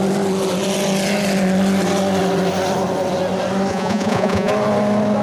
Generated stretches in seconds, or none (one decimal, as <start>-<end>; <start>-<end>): 3.7-4.5